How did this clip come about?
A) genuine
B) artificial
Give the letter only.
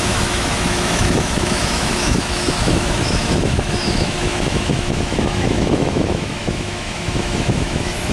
B